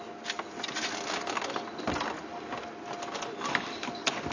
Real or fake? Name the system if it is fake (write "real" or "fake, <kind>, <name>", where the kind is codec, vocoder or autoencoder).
real